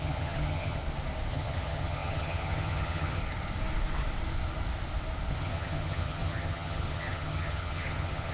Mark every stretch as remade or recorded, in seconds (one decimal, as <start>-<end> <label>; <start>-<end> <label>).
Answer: 0.0-0.8 remade; 0.8-1.3 recorded; 1.3-3.2 remade; 3.2-5.3 recorded; 5.3-8.3 remade